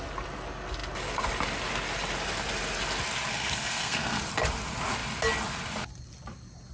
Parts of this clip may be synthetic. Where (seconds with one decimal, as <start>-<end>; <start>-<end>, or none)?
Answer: 3.3-4.2